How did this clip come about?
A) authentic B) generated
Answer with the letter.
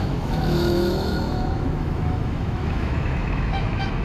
B